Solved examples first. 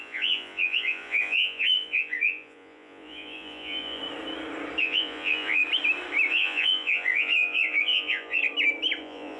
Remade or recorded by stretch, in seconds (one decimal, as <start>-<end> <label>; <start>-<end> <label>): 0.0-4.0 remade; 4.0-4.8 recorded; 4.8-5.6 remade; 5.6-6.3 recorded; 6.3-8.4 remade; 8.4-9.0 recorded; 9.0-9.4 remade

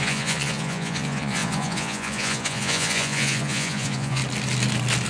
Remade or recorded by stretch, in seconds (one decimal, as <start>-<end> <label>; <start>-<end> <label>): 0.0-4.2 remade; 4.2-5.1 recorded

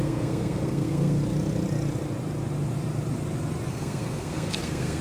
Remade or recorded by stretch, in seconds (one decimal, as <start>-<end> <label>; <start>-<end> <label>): 0.0-1.2 remade; 1.2-3.7 recorded; 3.7-5.0 remade